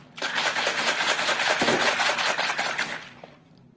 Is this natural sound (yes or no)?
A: yes